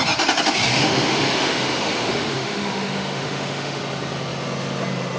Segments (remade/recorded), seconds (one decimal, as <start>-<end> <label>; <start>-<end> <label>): 0.0-0.7 recorded; 0.7-3.8 remade; 3.8-5.2 recorded